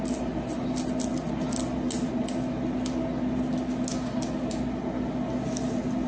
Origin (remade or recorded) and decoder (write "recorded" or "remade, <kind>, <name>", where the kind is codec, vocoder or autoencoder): recorded